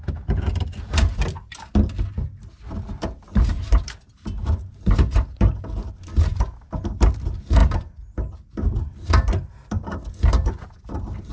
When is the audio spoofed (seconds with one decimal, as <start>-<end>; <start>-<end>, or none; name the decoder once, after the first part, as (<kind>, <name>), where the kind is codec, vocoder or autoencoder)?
3.3-5.9 (vocoder, BigVGAN v2)